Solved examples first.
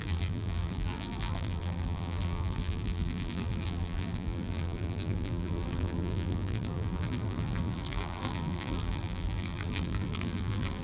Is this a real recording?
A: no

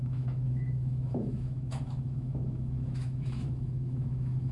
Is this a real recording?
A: no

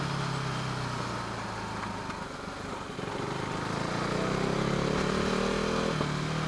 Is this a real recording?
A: yes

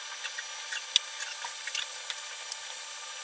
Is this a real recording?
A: yes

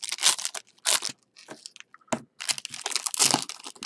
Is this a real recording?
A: yes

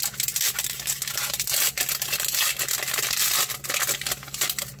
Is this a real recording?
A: yes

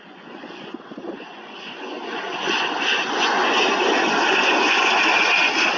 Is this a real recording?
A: no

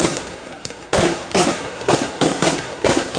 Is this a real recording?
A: no